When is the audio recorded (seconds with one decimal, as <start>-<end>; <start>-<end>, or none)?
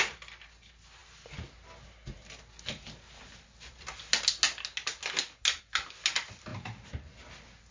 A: 0.0-7.7